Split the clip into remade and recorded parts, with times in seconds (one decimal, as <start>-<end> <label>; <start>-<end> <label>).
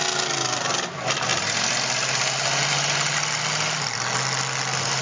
0.0-5.0 recorded